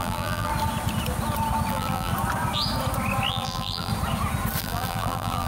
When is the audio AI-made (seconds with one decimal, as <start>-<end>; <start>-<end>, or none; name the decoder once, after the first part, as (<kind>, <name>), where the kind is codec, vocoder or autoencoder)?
0.0-0.5 (vocoder, BigVGAN v2); 1.7-2.1; 3.3-3.9; 4.6-5.5